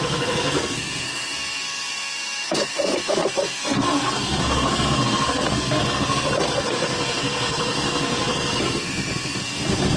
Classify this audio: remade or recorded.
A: remade